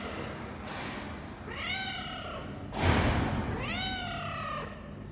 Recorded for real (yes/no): yes